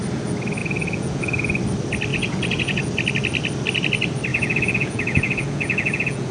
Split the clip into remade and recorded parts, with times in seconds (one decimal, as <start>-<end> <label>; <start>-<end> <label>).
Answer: 0.0-0.6 recorded; 0.6-1.2 remade; 1.2-2.1 recorded; 2.1-2.8 remade; 2.8-4.3 recorded; 4.3-6.3 remade